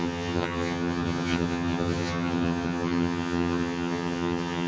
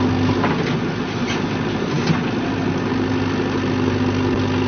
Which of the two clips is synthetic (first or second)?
first